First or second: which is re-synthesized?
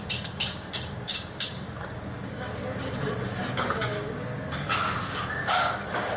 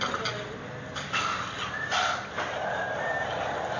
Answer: first